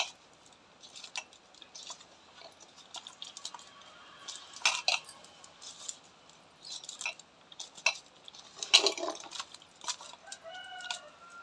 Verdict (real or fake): real